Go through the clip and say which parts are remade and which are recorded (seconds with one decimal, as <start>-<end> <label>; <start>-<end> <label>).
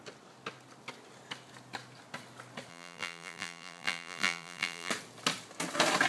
0.0-2.7 recorded; 2.7-4.9 remade; 4.9-6.1 recorded